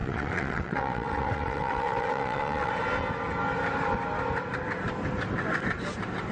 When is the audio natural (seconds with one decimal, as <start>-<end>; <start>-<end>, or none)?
2.7-6.3